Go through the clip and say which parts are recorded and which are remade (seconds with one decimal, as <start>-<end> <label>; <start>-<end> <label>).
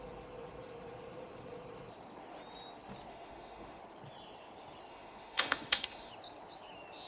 0.0-3.1 recorded; 3.1-3.8 remade; 3.8-4.9 recorded; 4.9-6.1 remade; 6.1-7.1 recorded